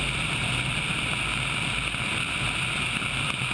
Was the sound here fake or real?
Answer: real